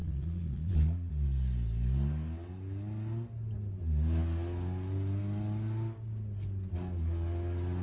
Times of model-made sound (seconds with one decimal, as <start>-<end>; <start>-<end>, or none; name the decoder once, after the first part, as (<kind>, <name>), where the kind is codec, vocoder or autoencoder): 0.0-1.1 (vocoder, Vocos)